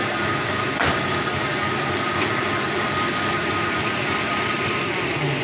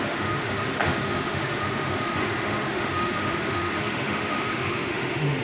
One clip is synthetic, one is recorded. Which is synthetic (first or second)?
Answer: second